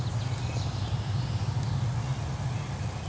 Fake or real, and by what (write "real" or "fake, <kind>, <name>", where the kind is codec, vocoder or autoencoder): real